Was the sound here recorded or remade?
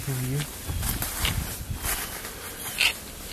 recorded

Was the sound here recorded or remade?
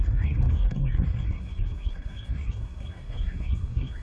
remade